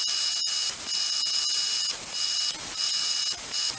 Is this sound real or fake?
real